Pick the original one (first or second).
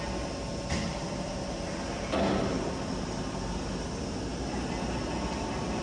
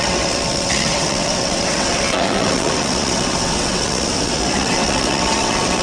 first